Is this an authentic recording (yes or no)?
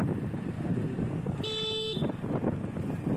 yes